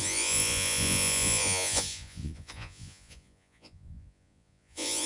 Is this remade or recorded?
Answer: remade